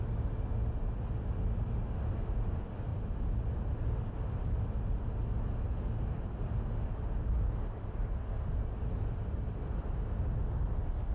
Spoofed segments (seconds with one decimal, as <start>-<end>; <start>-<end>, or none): none